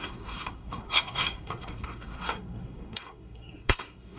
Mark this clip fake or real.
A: fake